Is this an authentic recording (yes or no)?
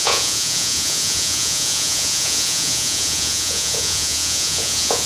no